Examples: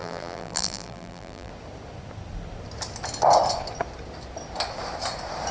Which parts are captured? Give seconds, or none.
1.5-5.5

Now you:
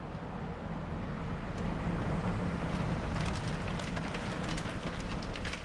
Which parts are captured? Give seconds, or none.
0.0-5.6

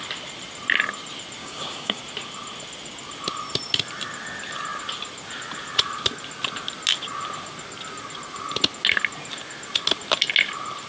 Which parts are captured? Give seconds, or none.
0.0-1.4; 2.0-10.9

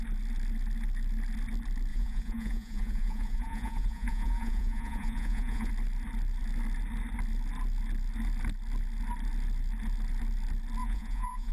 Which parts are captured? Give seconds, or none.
0.0-1.9; 5.7-10.8

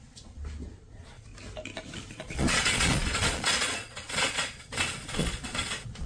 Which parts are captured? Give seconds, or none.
0.4-0.9; 1.3-2.1

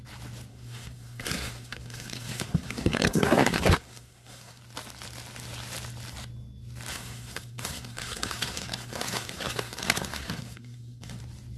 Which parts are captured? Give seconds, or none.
0.0-0.5; 4.6-6.9; 11.2-11.6

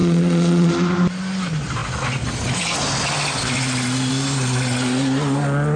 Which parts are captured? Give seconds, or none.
0.7-5.8